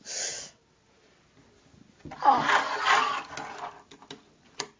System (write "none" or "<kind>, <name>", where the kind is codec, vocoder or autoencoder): none